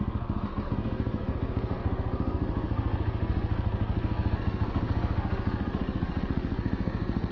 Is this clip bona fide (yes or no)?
no